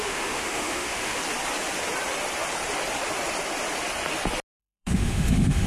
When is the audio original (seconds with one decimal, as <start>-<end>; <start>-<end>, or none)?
1.2-4.6